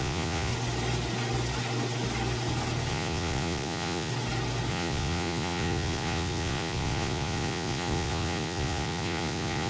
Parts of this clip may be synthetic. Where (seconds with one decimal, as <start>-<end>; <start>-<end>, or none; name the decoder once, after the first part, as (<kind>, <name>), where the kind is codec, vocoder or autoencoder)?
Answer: 0.0-0.5 (vocoder, Vocos); 2.9-4.1; 4.7-9.7

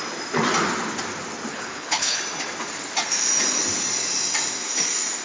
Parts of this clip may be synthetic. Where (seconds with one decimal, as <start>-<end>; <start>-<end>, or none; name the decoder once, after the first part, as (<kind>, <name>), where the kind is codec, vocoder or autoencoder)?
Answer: 1.5-2.2 (codec, HILCodec)

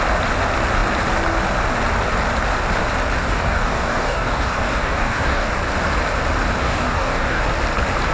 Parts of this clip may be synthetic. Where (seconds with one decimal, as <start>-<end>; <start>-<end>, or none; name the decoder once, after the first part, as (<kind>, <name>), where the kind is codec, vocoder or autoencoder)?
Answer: 3.2-5.5 (codec, DAC); 6.6-7.4

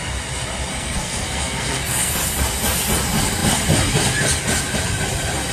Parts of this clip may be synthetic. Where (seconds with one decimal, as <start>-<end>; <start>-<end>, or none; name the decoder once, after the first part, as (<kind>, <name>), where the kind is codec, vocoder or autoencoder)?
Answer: 0.7-2.2 (codec, SNAC)

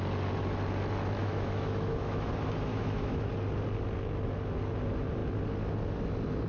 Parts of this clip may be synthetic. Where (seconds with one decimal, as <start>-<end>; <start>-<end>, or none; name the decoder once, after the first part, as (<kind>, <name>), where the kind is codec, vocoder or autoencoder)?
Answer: 1.2-2.3 (autoencoder, DAC-VAE); 2.7-3.3

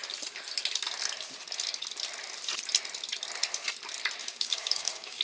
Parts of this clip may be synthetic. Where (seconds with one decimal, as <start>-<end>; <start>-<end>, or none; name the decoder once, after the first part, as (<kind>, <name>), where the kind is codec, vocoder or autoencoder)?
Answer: 4.2-5.2 (codec, DAC)

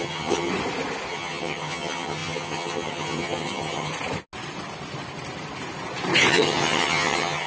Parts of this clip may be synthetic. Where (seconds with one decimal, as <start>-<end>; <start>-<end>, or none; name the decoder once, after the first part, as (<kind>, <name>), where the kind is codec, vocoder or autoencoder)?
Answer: 0.0-0.5 (vocoder, HiFi-GAN); 1.1-3.9; 6.3-7.5

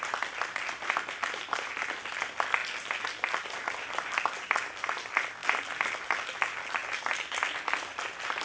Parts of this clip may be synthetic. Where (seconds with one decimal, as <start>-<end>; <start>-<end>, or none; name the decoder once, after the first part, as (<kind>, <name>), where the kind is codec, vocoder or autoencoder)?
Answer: none